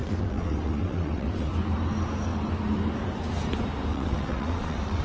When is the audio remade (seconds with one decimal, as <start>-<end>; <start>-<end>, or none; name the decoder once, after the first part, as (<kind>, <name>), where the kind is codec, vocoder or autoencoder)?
0.0-1.5 (vocoder, WaveNeXt); 3.9-5.0